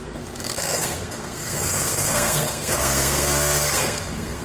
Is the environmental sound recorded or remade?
remade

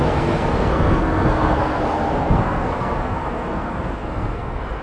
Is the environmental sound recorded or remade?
remade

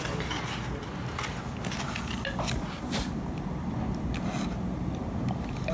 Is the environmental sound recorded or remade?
recorded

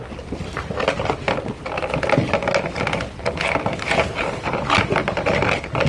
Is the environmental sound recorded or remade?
recorded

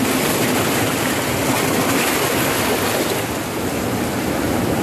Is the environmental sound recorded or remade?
recorded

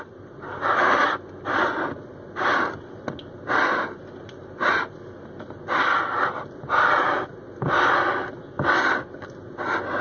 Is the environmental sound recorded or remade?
recorded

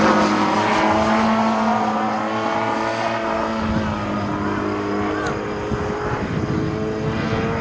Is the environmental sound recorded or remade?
recorded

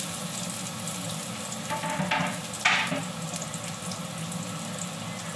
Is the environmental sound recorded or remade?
recorded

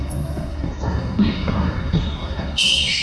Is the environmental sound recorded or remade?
remade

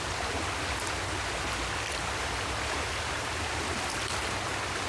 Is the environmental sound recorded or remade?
recorded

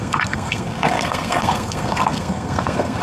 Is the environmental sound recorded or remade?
remade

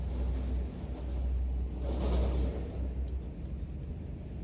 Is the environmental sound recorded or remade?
recorded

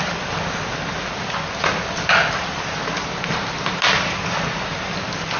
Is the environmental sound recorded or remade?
recorded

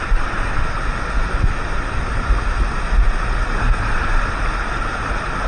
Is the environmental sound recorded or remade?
recorded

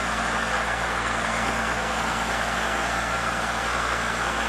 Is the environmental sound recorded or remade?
remade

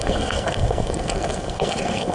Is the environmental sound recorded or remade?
remade